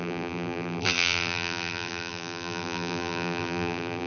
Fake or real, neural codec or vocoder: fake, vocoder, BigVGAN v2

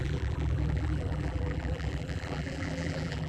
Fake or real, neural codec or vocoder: fake, vocoder, BigVGAN v2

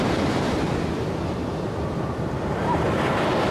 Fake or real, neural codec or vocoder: fake, vocoder, BigVGAN v2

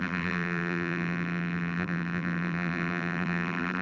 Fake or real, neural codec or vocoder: fake, vocoder, BigVGAN v2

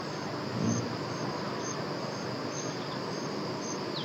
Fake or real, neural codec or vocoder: fake, vocoder, BigVGAN v2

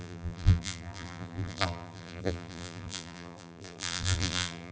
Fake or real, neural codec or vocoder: fake, vocoder, BigVGAN v2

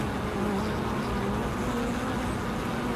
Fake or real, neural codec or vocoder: real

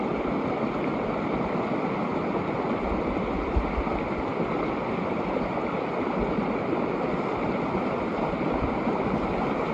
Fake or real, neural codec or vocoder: real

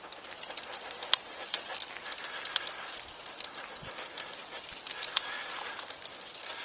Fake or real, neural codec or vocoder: real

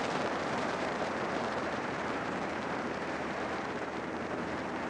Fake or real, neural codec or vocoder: fake, vocoder, BigVGAN v2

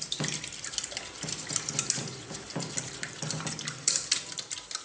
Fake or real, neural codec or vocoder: fake, vocoder, BigVGAN v2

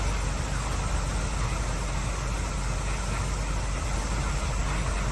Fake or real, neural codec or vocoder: real